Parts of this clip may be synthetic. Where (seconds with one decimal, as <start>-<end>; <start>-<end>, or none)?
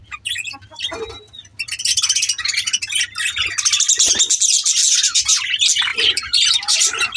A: 5.9-6.8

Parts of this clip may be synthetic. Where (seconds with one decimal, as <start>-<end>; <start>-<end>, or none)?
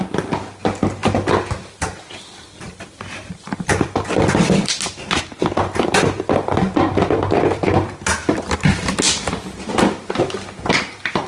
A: 1.0-4.8